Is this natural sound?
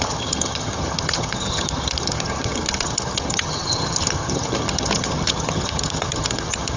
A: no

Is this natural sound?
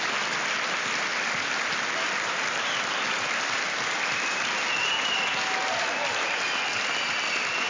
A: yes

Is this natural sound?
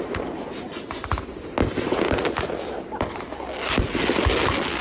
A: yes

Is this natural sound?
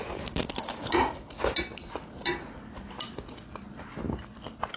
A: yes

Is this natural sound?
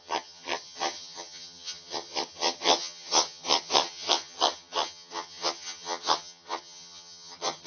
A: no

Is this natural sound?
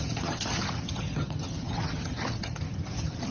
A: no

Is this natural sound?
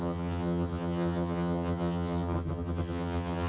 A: no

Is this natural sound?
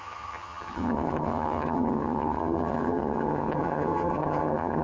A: no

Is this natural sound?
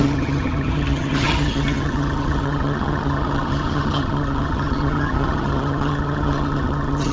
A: no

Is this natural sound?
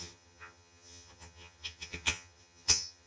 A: no